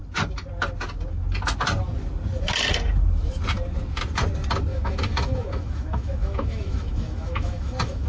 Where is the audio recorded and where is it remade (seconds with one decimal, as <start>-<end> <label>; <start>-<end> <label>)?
0.0-4.7 recorded; 4.7-8.1 remade